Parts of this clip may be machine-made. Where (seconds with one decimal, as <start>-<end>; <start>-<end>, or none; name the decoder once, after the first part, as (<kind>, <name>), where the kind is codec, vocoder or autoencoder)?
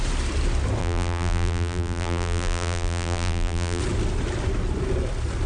0.8-3.8 (vocoder, BigVGAN v2)